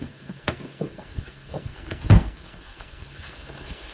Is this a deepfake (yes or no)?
yes